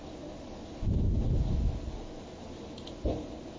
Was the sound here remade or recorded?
recorded